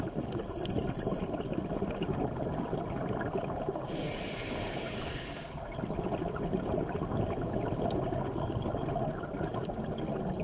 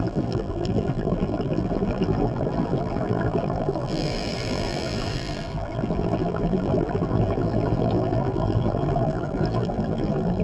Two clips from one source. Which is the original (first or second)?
first